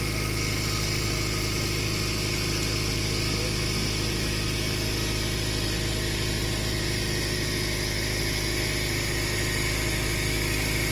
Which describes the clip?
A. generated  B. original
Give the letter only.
B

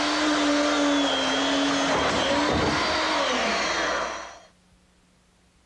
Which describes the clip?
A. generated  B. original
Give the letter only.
B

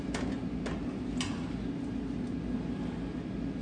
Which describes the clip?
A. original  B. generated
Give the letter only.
A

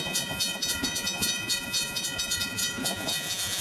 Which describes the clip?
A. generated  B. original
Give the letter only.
A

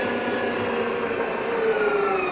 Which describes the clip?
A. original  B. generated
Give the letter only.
A